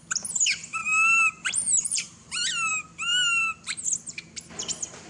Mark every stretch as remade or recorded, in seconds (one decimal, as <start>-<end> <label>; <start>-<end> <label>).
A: 0.0-0.8 recorded; 0.8-2.7 remade; 2.7-5.1 recorded